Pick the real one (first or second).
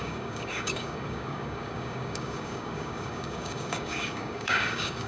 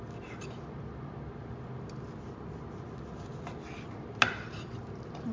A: second